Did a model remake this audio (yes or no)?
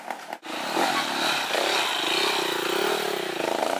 no